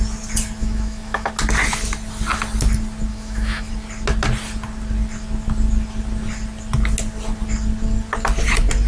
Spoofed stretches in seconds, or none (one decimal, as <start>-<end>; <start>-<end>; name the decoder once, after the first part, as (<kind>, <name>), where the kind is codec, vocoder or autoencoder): 0.6-1.3 (autoencoder, DAC-VAE); 3.1-3.7